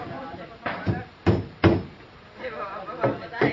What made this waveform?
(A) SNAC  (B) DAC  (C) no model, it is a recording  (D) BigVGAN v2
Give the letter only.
D